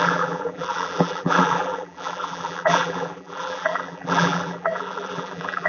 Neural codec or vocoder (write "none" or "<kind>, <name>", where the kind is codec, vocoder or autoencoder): vocoder, BigVGAN v2